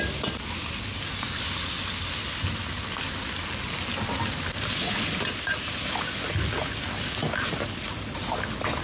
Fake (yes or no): no